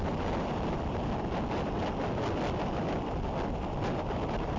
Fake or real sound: real